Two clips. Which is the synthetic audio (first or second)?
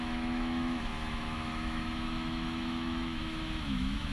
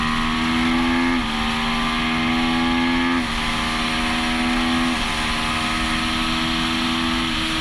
first